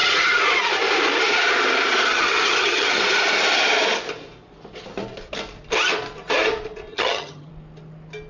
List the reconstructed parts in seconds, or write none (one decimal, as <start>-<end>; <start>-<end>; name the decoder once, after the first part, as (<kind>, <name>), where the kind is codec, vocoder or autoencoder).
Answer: 2.1-3.0 (vocoder, HiFi-GAN); 6.9-7.5